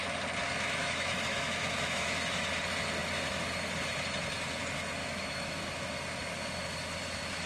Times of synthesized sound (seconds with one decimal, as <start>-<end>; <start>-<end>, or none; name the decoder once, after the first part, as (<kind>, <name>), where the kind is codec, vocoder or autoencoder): 0.8-2.6 (autoencoder, DAC-VAE); 5.0-5.6